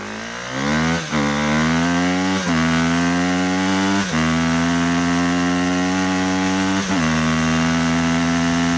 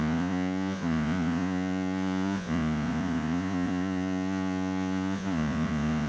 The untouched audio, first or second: first